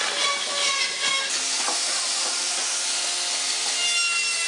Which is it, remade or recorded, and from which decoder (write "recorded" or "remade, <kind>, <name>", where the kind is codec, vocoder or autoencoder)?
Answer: recorded